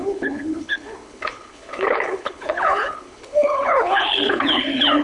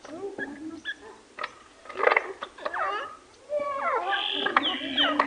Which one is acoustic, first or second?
second